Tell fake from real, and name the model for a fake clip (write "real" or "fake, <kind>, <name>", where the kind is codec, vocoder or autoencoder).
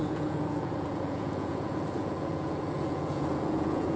fake, vocoder, Vocos